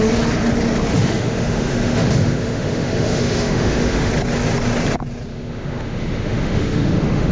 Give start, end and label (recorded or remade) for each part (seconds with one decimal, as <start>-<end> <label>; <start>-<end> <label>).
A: 0.0-0.9 recorded; 0.9-4.1 remade; 4.1-5.3 recorded; 5.3-7.3 remade